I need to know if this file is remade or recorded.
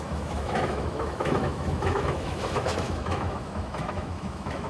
remade